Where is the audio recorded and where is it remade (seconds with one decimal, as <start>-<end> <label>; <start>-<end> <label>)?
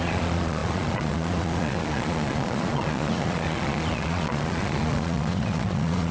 0.0-6.1 remade